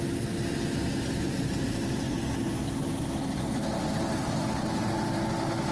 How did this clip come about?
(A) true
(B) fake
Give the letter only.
A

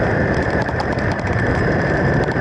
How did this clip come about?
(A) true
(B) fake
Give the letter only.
B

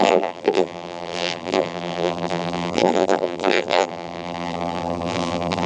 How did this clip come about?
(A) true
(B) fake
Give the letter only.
B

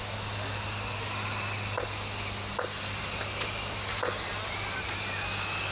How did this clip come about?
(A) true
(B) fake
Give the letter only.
A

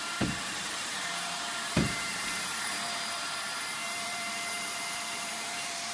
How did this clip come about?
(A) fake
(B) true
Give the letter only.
A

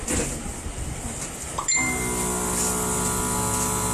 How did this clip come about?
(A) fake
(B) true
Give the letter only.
B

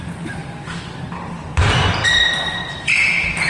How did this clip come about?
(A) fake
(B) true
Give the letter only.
A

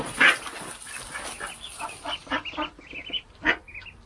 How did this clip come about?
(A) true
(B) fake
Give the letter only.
A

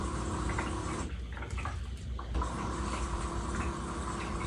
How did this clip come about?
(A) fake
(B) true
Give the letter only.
B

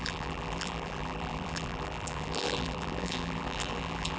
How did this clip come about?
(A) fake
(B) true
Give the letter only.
A